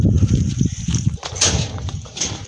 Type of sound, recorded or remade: remade